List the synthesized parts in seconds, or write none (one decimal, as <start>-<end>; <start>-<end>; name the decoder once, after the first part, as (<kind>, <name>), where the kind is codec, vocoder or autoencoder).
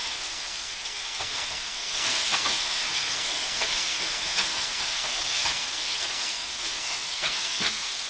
0.0-8.1 (codec, SNAC)